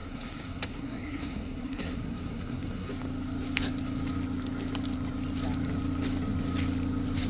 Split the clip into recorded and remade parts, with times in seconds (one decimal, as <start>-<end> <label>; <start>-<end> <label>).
0.0-2.9 remade; 2.9-7.3 recorded